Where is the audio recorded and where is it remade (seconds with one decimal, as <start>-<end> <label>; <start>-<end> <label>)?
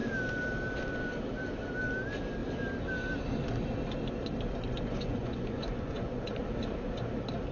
0.0-4.7 recorded; 4.7-6.4 remade; 6.4-7.5 recorded